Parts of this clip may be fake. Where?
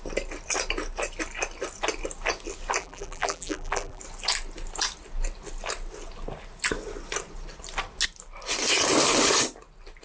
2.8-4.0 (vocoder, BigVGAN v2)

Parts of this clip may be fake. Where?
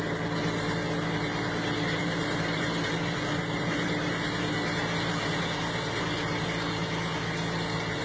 2.0-2.6 (vocoder, BigVGAN v2)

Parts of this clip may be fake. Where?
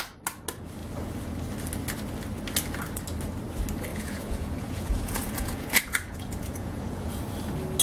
3.9-7.2 (vocoder, Vocos)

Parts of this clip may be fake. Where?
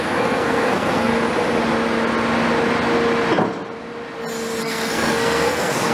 0.0-1.1 (codec, SNAC); 4.6-5.9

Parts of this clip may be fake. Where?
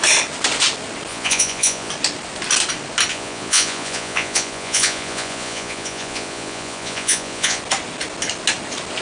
1.1-1.9 (vocoder, Vocos); 3.1-7.6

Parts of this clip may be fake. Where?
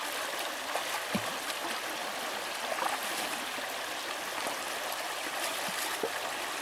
none